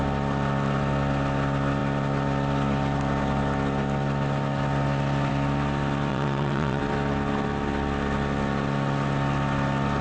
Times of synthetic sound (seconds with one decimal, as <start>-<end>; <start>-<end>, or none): 6.1-6.8